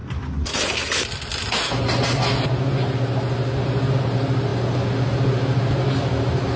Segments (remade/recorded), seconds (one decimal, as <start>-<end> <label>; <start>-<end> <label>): 0.0-6.6 recorded

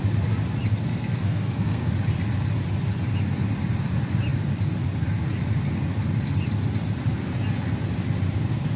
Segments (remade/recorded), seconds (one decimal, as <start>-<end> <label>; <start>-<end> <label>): 0.0-0.9 recorded; 0.9-1.9 remade; 1.9-8.8 recorded